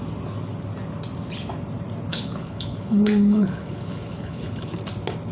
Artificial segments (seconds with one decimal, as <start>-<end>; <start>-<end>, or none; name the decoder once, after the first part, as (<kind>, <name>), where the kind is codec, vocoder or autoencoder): 2.1-4.7 (codec, HILCodec)